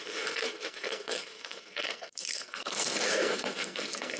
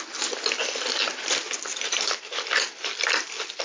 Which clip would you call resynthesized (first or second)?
first